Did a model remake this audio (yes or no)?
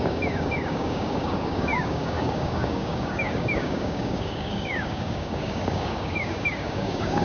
yes